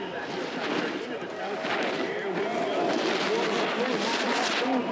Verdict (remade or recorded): recorded